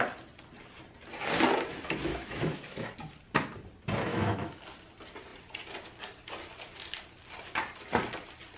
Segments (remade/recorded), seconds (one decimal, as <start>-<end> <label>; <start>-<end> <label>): 0.0-2.1 recorded; 2.1-2.9 remade; 2.9-4.1 recorded; 4.1-4.6 remade; 4.6-8.6 recorded